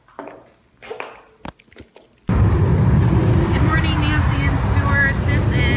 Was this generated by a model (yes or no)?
no